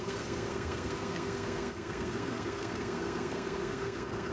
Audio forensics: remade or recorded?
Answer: remade